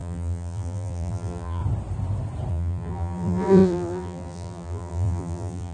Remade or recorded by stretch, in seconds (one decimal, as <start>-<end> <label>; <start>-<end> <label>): 0.0-1.6 remade; 1.6-2.5 recorded; 2.5-5.7 remade